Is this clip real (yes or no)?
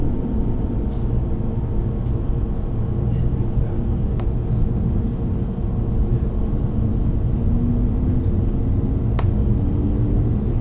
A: yes